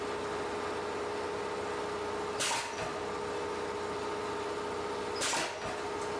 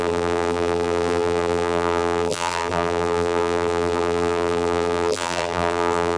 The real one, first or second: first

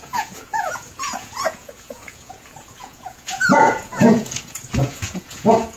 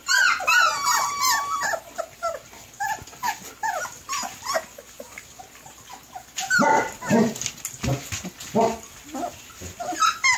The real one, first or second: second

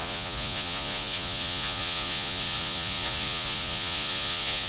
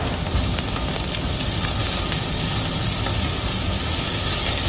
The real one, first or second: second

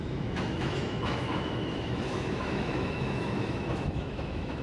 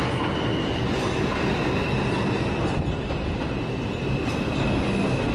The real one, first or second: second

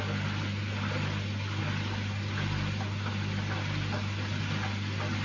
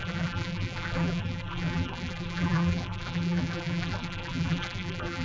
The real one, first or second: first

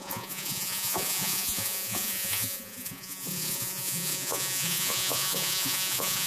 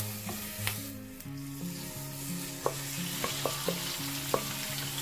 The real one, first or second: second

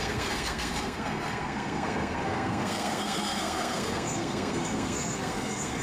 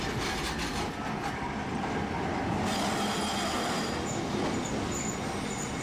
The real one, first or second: second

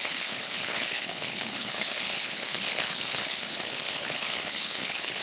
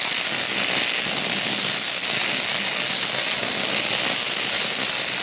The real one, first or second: second